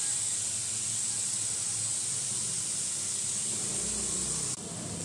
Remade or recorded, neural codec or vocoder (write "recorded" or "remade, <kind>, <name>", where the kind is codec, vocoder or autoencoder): recorded